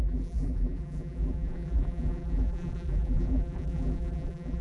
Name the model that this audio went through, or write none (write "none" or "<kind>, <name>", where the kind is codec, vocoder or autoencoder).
vocoder, BigVGAN v2